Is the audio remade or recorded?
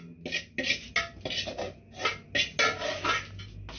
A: recorded